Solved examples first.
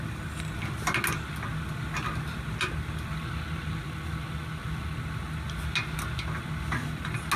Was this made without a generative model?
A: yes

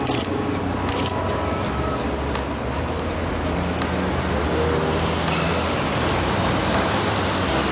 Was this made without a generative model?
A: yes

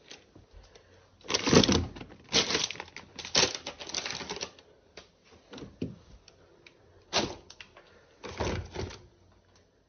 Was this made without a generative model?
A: yes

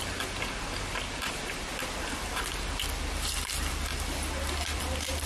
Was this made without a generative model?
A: no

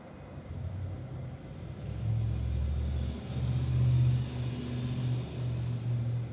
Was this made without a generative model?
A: yes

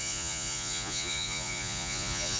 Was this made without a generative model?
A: no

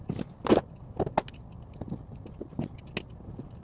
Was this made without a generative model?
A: yes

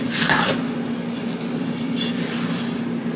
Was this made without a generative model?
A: yes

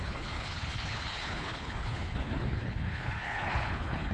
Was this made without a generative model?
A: no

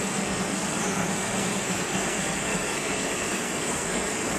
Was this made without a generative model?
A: no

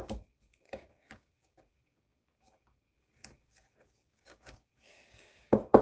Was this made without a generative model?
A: no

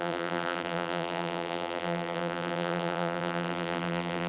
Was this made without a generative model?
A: no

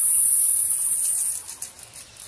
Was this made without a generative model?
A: yes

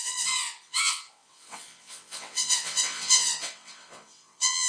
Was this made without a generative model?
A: no